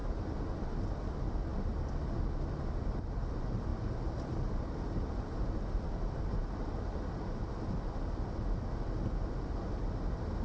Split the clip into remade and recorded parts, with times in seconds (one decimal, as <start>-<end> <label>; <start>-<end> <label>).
0.0-10.4 recorded

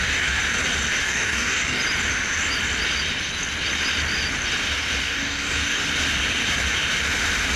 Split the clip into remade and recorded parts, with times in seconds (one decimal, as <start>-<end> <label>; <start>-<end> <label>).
0.0-0.4 remade; 0.4-1.0 recorded; 1.0-1.8 remade; 1.8-5.0 recorded; 5.0-5.8 remade; 5.8-7.6 recorded

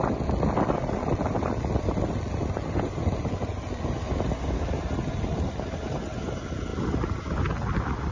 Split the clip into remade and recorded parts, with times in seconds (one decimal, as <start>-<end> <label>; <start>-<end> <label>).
0.0-8.1 recorded

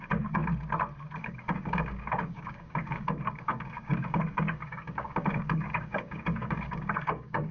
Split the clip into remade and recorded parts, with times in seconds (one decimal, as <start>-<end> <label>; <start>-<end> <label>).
0.0-0.4 remade; 0.4-1.2 recorded; 1.2-7.5 remade